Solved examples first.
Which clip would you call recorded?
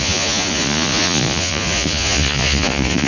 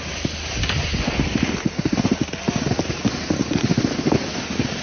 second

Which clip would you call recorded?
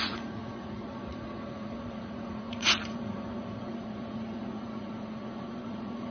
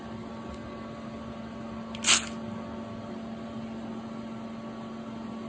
second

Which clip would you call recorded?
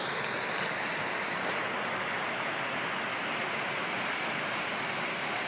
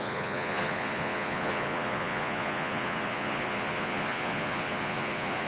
first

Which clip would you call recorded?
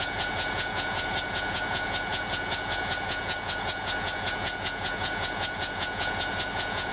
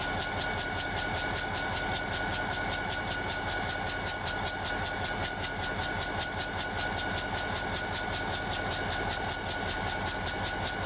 second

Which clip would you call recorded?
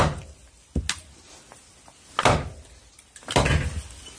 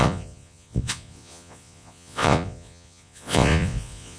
first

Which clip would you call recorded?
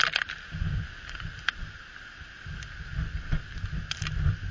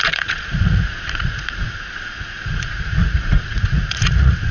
first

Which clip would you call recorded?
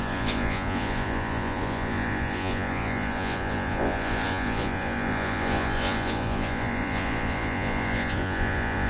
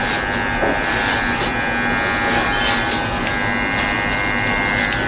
second